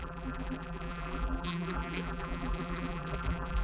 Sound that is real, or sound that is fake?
fake